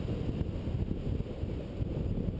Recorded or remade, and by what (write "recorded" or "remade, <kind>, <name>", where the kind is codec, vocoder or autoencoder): recorded